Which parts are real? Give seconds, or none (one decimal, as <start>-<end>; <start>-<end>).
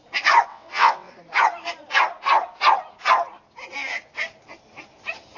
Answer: 0.0-0.5; 1.1-5.4